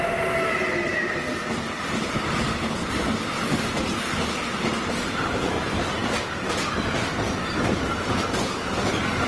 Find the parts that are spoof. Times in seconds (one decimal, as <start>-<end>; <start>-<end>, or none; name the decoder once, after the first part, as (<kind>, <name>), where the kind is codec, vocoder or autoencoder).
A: none